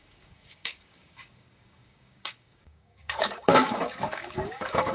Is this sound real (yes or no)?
no